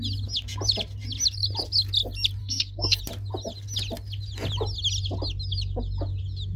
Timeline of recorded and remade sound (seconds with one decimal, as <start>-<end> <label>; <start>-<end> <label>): 0.0-2.4 recorded; 2.4-3.0 remade; 3.0-6.6 recorded